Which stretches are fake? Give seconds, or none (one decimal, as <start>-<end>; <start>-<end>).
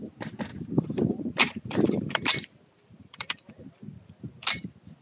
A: 0.5-3.5